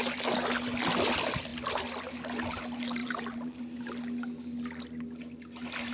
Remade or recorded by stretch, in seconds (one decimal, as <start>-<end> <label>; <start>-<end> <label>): 0.0-3.0 recorded; 3.0-3.6 remade; 3.6-5.9 recorded